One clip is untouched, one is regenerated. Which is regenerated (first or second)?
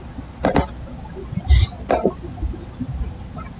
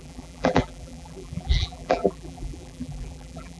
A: second